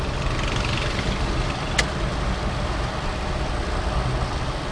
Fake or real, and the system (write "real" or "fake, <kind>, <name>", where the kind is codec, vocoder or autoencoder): real